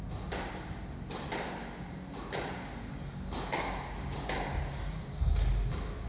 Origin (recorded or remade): recorded